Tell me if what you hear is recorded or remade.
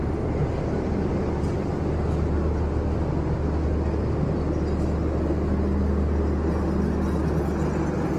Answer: recorded